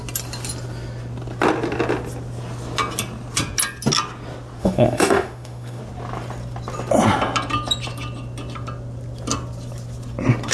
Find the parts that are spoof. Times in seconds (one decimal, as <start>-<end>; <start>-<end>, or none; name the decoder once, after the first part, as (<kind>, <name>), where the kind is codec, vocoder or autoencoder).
4.6-5.8 (autoencoder, DAC-VAE)

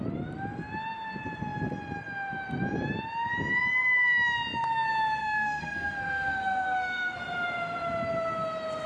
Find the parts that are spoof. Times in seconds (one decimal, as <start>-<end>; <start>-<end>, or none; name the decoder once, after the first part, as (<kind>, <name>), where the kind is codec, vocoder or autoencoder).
5.2-7.2 (codec, SNAC)

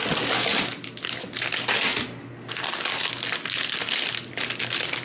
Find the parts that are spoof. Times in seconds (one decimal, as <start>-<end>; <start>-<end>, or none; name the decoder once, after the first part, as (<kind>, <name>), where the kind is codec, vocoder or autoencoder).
none

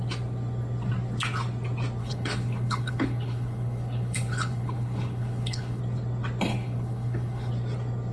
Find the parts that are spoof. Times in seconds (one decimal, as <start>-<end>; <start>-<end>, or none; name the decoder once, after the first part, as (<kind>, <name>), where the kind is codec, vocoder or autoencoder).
2.0-5.8 (codec, HILCodec); 6.5-7.5

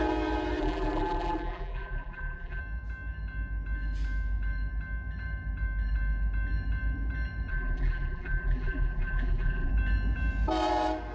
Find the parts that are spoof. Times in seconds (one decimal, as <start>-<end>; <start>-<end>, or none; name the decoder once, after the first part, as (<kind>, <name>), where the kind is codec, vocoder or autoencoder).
0.6-2.6 (vocoder, BigVGAN v2); 7.5-9.7